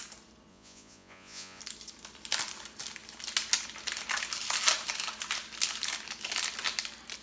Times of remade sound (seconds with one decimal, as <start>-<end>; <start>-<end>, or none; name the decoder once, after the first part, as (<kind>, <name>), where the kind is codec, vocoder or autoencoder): 0.5-1.6 (vocoder, Vocos)